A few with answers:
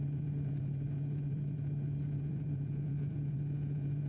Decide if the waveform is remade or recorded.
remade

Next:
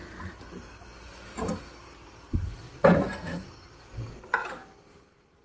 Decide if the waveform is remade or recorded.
recorded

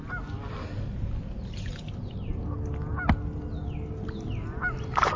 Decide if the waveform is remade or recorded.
recorded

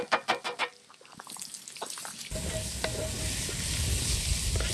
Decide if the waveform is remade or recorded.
recorded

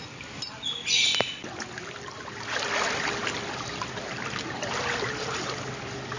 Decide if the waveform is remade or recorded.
recorded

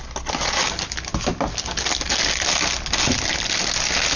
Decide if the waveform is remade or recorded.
recorded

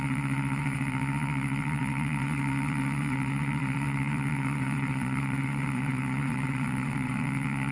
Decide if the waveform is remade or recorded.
remade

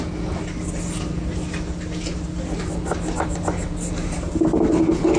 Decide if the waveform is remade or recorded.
recorded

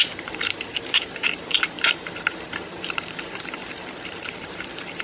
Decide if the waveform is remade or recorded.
remade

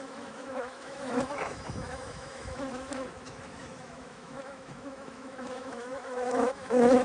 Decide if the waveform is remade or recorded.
remade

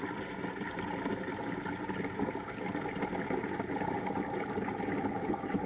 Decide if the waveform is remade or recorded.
recorded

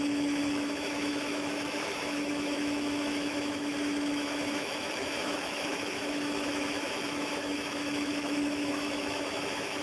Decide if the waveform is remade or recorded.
remade